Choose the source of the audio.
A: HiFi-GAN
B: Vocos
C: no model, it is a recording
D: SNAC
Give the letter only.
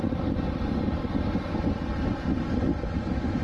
C